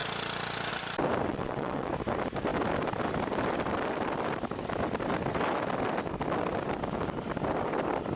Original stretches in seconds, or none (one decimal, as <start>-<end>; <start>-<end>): 0.0-1.3; 1.9-8.2